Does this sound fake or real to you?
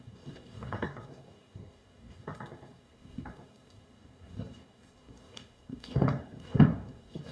fake